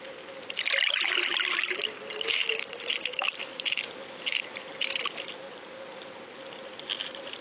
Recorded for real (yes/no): yes